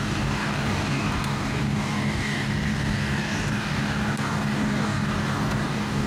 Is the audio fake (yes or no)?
yes